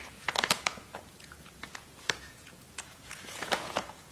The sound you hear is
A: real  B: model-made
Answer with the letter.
B